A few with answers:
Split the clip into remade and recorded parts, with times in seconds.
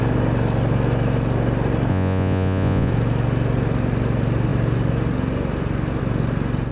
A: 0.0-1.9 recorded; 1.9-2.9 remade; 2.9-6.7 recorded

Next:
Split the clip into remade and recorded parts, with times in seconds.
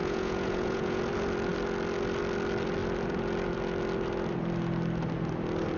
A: 0.0-1.0 remade; 1.0-5.8 recorded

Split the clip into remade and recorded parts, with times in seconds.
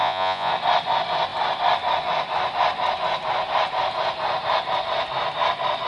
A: 0.0-0.5 remade; 0.5-5.9 recorded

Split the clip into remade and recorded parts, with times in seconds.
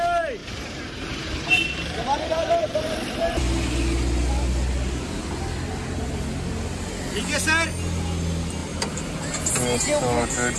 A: 0.0-0.4 recorded; 0.4-3.4 remade; 3.4-8.6 recorded; 8.6-9.5 remade; 9.5-10.6 recorded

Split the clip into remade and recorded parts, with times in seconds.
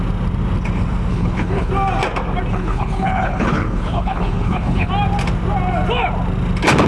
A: 0.0-1.1 recorded; 1.1-1.7 remade; 1.7-2.5 recorded; 2.5-4.9 remade; 4.9-6.9 recorded